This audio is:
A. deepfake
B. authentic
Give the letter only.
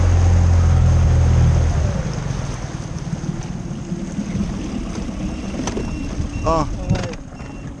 B